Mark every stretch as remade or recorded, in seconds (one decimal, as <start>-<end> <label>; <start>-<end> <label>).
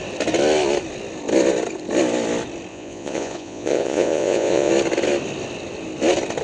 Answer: 0.0-2.7 recorded; 2.7-4.7 remade; 4.7-6.4 recorded